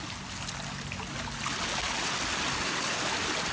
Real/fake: real